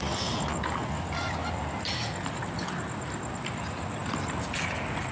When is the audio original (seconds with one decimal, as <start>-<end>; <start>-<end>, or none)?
0.0-5.1